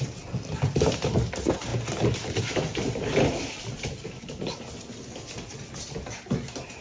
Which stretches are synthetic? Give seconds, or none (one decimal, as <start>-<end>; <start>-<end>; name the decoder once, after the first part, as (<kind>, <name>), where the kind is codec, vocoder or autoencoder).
none